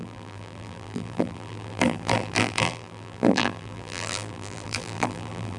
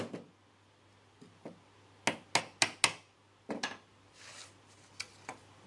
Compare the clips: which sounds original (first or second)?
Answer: second